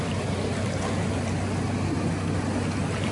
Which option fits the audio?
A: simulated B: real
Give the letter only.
B